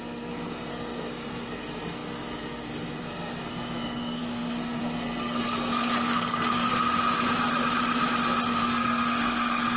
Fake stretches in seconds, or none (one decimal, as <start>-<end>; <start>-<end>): 0.0-6.7; 8.6-9.8